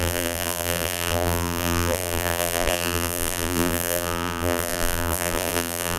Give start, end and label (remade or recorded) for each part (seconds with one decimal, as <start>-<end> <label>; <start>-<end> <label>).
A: 0.0-6.0 remade